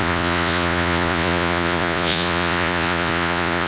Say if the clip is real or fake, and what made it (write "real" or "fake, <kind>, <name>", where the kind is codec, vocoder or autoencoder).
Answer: fake, vocoder, Vocos